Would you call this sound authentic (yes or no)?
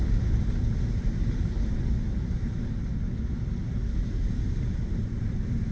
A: yes